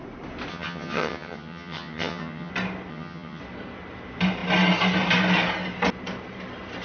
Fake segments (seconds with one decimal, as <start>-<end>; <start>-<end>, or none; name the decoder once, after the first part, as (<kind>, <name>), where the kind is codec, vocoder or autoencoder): 0.5-2.5 (vocoder, HiFi-GAN); 2.9-3.4